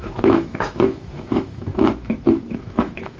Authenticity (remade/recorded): remade